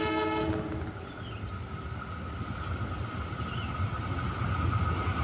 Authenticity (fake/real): real